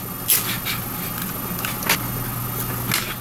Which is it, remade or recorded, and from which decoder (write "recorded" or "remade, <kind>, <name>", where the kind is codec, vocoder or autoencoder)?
recorded